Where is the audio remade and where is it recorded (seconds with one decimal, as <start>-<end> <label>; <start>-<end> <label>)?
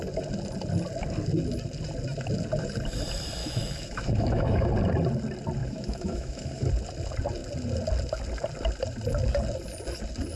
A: 0.0-3.4 recorded; 3.4-4.7 remade; 4.7-5.6 recorded; 5.6-6.7 remade; 6.7-10.4 recorded